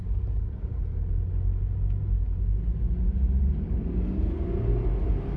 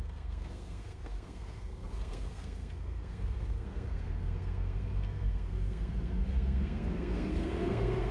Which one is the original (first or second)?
first